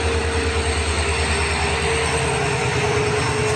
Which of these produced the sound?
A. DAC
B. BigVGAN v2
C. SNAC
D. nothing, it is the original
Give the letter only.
D